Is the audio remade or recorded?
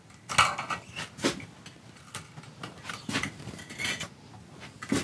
recorded